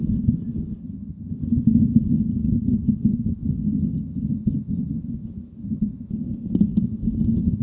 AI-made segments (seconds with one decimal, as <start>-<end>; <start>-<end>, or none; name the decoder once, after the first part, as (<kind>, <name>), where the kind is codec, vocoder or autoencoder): 0.8-1.3 (vocoder, HiFi-GAN); 3.4-5.1; 5.6-6.1

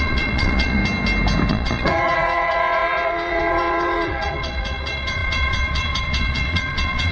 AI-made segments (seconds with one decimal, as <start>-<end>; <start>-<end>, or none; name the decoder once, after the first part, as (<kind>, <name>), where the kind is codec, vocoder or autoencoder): 0.0-0.8 (vocoder, Vocos); 1.5-7.1

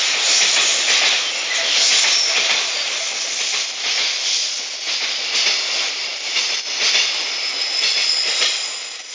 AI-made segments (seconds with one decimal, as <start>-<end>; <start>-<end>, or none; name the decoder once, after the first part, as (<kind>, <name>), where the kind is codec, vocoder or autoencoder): none

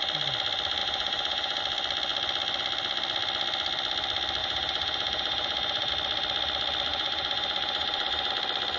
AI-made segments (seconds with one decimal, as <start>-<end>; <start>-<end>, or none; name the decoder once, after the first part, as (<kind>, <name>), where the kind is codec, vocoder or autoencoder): 0.8-1.6 (vocoder, BigVGAN v2); 4.4-5.9; 6.9-8.3

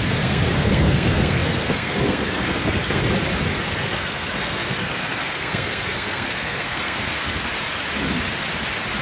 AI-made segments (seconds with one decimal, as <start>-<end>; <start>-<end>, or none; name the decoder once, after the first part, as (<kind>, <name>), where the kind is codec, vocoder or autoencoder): 0.0-3.0 (codec, SNAC); 3.5-7.5